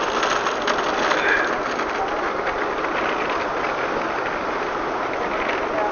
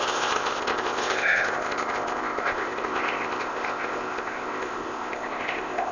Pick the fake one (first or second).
second